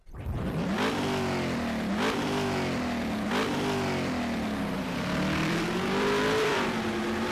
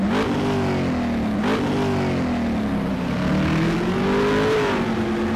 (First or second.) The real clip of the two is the second